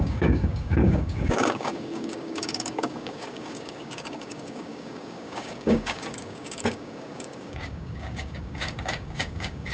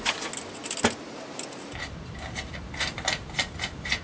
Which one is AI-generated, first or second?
first